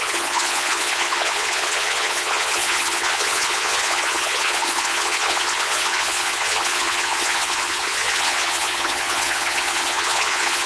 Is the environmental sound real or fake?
fake